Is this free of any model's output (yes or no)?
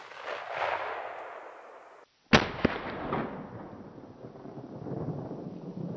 yes